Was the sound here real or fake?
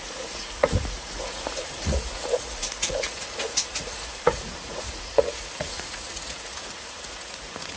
fake